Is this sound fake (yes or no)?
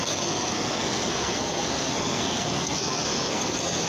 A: yes